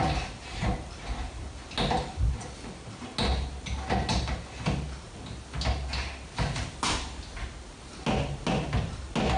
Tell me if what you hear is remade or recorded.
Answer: recorded